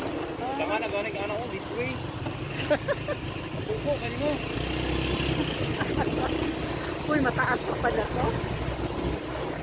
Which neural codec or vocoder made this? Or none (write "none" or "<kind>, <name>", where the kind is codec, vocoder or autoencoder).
none